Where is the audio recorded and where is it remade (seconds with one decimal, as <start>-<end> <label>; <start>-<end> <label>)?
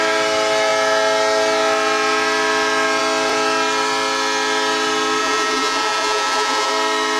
0.0-5.2 recorded; 5.2-6.7 remade; 6.7-7.2 recorded